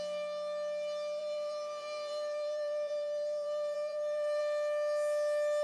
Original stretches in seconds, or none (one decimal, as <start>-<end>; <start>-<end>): 0.0-1.2; 4.4-5.6